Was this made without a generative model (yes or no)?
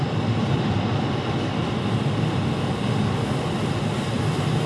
yes